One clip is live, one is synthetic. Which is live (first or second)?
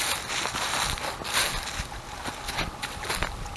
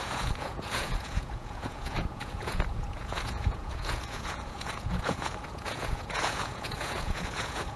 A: first